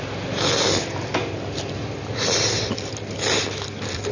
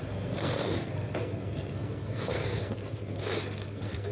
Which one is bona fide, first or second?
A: first